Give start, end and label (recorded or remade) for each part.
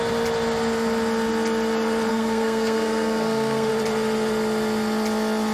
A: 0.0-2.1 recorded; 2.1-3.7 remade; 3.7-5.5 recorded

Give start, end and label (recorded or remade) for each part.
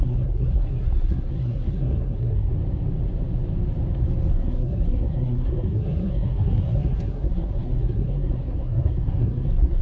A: 0.0-2.5 remade; 2.5-4.3 recorded; 4.3-9.8 remade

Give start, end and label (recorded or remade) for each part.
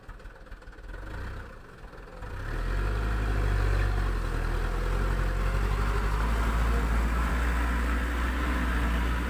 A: 0.0-9.3 recorded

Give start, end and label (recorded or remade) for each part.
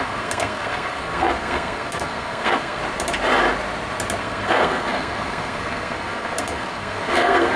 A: 0.0-2.8 remade; 2.8-4.2 recorded; 4.2-7.6 remade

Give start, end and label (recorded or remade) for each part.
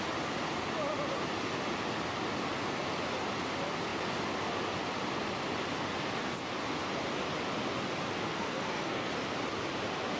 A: 0.0-8.3 recorded; 8.3-9.1 remade; 9.1-10.2 recorded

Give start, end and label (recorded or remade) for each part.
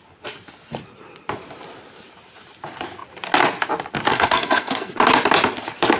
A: 0.0-4.1 recorded; 4.1-4.9 remade; 4.9-6.0 recorded